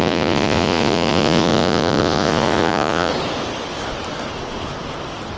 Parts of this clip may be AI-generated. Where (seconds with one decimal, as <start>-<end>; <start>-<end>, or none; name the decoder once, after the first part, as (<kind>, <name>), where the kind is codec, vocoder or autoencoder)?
0.0-3.1 (vocoder, Vocos)